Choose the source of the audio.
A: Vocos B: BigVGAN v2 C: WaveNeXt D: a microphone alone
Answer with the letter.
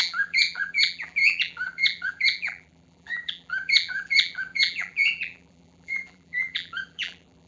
B